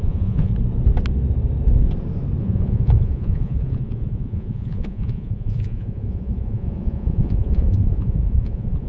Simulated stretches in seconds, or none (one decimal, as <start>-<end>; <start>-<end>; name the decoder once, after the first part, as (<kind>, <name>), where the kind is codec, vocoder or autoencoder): 0.0-0.5 (vocoder, Vocos); 2.4-8.9